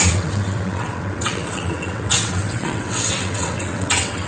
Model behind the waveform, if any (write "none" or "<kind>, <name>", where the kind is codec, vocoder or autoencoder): vocoder, WaveNeXt